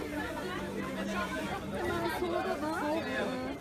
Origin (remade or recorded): remade